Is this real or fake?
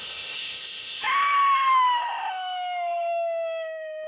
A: fake